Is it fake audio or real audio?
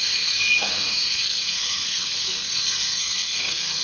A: fake